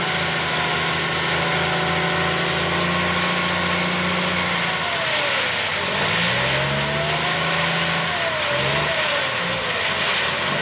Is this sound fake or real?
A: real